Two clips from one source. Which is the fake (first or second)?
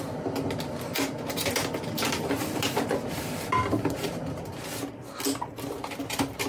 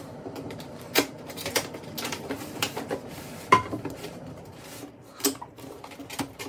second